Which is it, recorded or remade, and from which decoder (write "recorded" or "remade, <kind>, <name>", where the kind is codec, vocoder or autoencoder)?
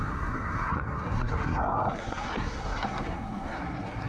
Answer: remade, codec, SNAC